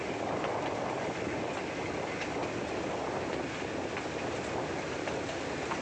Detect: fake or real real